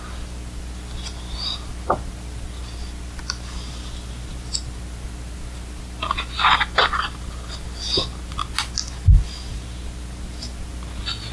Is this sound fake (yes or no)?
no